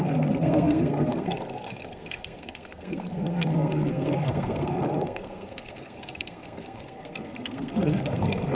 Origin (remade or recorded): remade